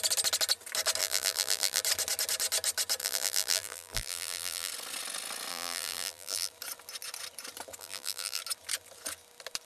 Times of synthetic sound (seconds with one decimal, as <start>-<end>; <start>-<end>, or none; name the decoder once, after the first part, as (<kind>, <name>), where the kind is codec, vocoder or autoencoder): 1.0-1.8 (vocoder, BigVGAN v2); 3.0-4.7; 5.5-6.5; 7.8-8.4

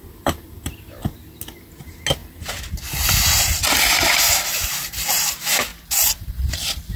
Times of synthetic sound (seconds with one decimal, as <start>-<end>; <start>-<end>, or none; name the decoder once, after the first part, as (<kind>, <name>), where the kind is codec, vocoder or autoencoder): 2.2-4.2 (vocoder, BigVGAN v2)

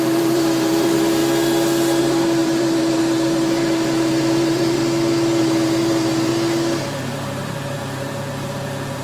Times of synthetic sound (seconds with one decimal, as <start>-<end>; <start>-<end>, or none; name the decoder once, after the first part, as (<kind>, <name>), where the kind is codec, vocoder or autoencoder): 0.0-1.2 (vocoder, BigVGAN v2); 2.0-4.8; 5.4-6.3; 6.8-9.0

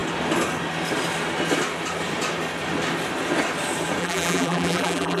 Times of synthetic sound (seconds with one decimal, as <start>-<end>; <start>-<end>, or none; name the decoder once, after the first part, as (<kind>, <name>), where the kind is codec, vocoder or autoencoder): 4.0-5.2 (vocoder, BigVGAN v2)

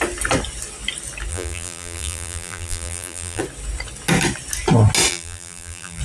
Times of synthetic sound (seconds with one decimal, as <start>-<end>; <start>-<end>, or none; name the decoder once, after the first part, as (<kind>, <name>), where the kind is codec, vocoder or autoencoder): 1.3-3.4 (vocoder, BigVGAN v2); 5.1-6.0

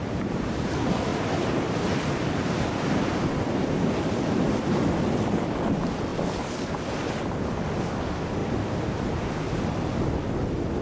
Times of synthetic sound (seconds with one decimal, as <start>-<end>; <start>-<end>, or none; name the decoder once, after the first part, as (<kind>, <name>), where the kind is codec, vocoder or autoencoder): 0.0-0.6 (vocoder, BigVGAN v2); 1.1-3.1

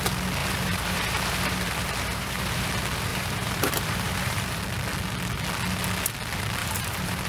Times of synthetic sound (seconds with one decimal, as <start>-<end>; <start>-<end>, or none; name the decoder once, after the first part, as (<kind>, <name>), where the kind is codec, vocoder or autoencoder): 0.4-2.7 (vocoder, BigVGAN v2); 3.1-4.6; 6.6-7.3